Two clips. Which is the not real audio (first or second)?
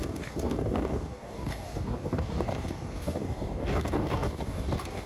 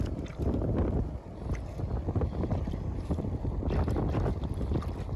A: first